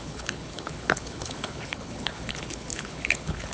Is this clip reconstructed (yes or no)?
yes